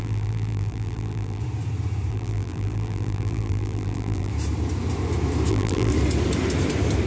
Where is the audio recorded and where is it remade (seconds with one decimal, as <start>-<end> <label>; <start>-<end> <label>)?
0.0-1.4 remade; 1.4-2.1 recorded; 2.1-4.3 remade; 4.3-5.5 recorded; 5.5-5.9 remade; 5.9-7.1 recorded